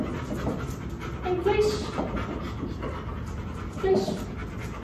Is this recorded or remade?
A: recorded